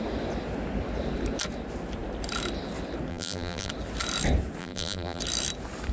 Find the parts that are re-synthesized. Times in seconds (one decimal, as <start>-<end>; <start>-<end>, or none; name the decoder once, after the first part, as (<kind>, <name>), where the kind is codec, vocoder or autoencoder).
3.1-3.7 (vocoder, BigVGAN v2); 4.6-5.2